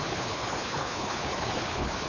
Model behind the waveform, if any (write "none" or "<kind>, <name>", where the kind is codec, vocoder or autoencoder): codec, HILCodec